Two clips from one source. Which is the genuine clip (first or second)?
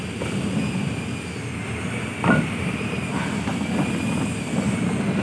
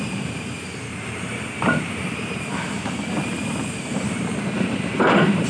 first